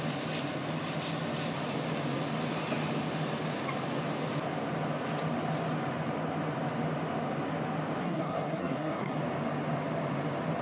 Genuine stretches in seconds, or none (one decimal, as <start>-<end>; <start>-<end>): 0.0-8.0; 9.2-10.6